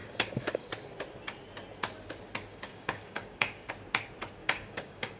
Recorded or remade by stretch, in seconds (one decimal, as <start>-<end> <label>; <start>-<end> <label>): 0.0-0.7 remade; 0.7-2.5 recorded; 2.5-3.7 remade; 3.7-4.4 recorded; 4.4-5.2 remade